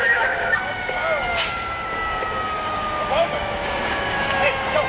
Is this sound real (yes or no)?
no